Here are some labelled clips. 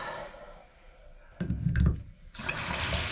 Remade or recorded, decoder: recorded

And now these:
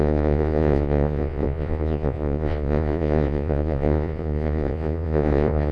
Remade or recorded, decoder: remade, vocoder, Vocos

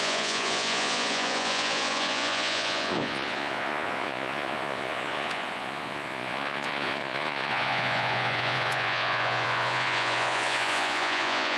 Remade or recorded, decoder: remade, vocoder, Vocos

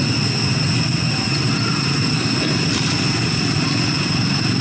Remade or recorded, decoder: recorded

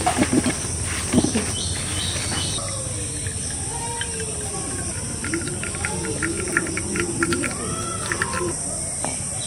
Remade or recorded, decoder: recorded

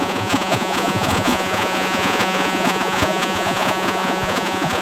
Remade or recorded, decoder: remade, vocoder, Vocos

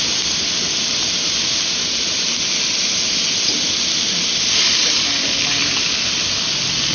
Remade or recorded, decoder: recorded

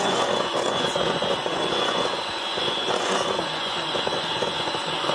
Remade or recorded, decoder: remade, vocoder, Vocos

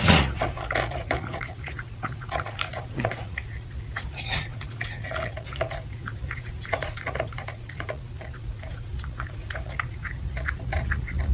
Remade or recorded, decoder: remade, vocoder, Vocos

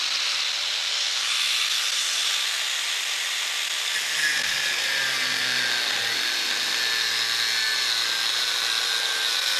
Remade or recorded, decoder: recorded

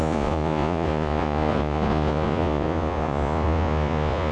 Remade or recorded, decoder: remade, vocoder, Vocos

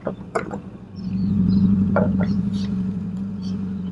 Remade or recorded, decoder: remade, vocoder, Vocos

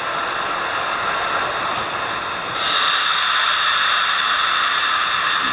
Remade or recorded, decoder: recorded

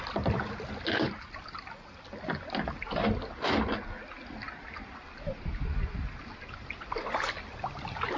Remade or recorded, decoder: recorded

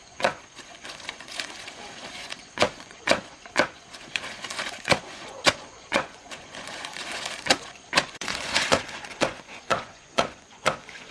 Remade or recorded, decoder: remade, vocoder, Vocos